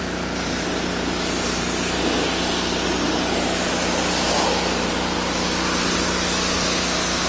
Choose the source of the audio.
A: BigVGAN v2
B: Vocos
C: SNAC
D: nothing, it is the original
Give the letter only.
D